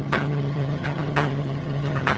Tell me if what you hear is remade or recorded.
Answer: remade